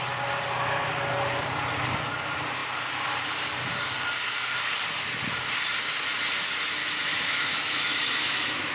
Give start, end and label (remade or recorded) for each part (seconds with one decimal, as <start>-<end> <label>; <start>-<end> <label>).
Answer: 0.0-6.8 recorded; 6.8-8.7 remade

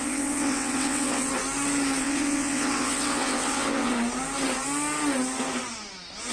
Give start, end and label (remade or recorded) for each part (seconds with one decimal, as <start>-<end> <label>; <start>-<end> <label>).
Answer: 0.0-1.3 remade; 1.3-2.0 recorded; 2.0-3.9 remade; 3.9-6.3 recorded